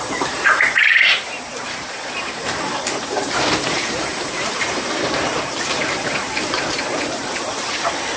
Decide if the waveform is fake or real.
fake